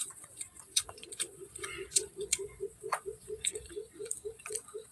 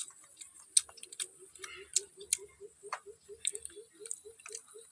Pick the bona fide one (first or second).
second